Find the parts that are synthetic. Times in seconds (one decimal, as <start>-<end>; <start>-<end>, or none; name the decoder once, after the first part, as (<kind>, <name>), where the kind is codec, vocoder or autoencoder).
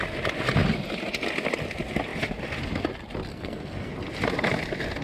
3.3-3.9 (codec, SNAC)